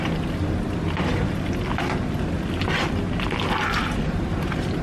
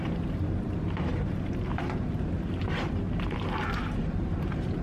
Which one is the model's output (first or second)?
second